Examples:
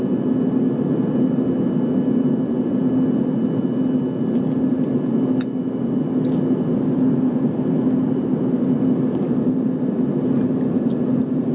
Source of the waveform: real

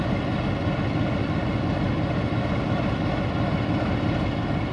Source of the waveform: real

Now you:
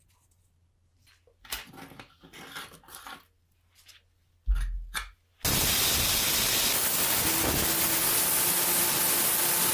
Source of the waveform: real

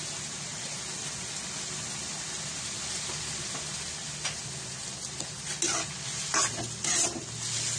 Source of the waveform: real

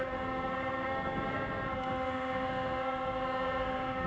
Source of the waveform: fake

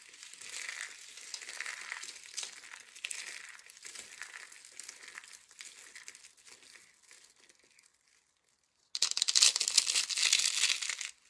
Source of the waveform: real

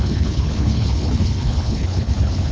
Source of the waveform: fake